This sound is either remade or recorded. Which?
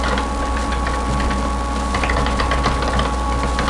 recorded